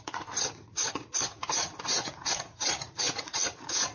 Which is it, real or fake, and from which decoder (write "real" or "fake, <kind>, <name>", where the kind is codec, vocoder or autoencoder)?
fake, vocoder, Vocos